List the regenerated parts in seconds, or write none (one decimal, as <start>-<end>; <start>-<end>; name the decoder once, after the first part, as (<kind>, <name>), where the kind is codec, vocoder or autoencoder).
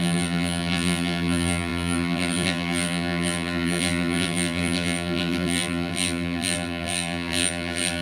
0.0-8.0 (vocoder, BigVGAN v2)